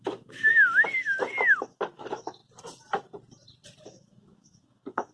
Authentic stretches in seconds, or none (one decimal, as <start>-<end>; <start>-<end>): 0.5-1.6; 2.4-3.8